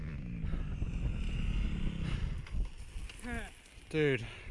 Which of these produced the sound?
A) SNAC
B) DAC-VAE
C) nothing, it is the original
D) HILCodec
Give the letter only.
C